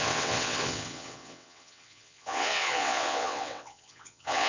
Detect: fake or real fake